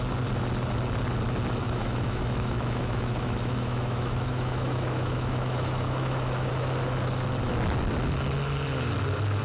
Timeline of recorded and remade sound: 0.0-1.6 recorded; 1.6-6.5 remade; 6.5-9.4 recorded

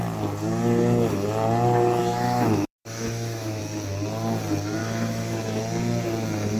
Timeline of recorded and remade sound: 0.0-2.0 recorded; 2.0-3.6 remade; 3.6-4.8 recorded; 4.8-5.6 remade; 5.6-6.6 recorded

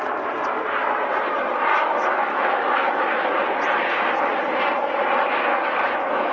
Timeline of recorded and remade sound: 0.0-1.7 recorded; 1.7-3.3 remade; 3.3-5.5 recorded; 5.5-6.3 remade